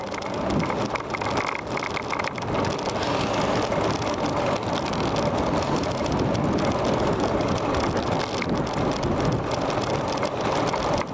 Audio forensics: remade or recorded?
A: recorded